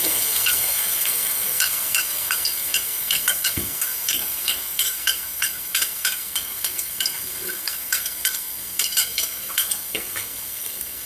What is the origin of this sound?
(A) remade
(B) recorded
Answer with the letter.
A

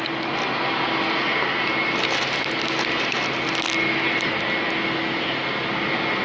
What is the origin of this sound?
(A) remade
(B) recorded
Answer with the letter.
B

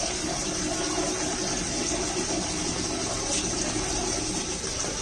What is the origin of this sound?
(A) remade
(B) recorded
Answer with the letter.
B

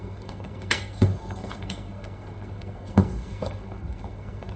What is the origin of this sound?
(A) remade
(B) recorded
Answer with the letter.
A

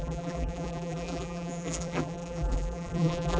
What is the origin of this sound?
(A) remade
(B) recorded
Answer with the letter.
A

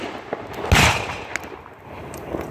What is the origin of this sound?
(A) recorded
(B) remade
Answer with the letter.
A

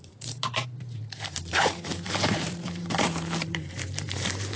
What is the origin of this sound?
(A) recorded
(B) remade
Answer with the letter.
B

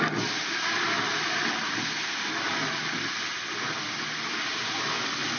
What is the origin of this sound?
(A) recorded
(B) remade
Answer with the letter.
A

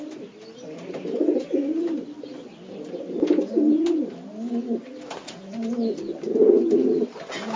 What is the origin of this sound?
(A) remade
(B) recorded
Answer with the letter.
B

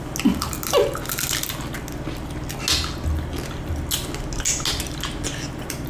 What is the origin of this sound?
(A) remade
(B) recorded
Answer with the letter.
B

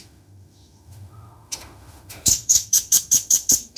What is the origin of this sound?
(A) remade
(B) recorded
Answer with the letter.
A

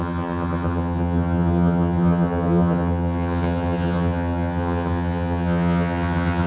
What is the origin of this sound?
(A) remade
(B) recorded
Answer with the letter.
A